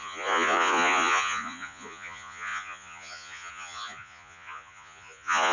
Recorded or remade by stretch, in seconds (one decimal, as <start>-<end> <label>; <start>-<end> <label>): 0.0-5.5 remade